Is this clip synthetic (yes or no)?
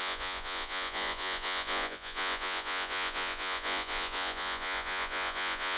yes